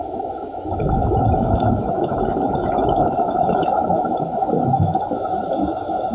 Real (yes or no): no